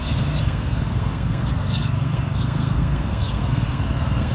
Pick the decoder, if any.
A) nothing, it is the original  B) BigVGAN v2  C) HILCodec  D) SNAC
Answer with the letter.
D